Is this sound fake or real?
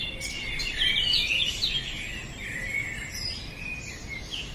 real